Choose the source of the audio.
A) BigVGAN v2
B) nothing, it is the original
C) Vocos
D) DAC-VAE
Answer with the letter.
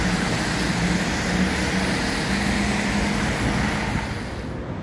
B